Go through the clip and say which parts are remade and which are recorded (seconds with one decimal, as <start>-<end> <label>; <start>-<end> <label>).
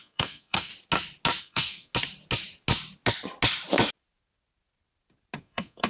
0.0-0.7 remade; 0.7-1.4 recorded; 1.4-1.9 remade; 1.9-5.4 recorded; 5.4-5.9 remade